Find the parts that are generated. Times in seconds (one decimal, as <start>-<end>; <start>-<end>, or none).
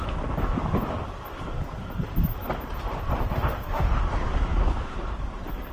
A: 3.3-4.0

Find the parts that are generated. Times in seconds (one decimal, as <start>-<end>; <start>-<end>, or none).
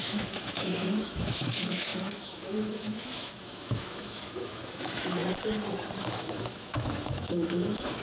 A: 0.0-5.2; 6.0-8.0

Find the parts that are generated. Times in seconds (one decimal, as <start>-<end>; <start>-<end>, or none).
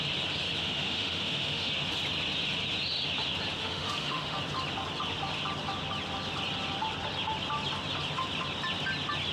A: 0.6-1.7; 3.6-4.4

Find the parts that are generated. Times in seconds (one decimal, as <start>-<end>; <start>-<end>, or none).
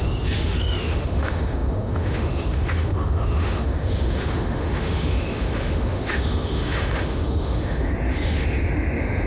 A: 0.0-9.3